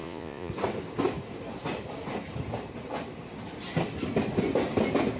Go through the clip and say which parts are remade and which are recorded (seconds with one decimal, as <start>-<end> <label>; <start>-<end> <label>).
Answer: 0.0-0.5 remade; 0.5-5.2 recorded